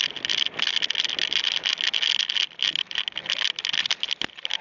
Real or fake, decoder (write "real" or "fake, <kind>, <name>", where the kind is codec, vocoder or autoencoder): real